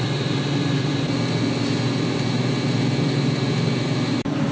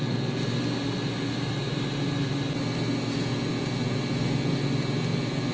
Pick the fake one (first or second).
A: first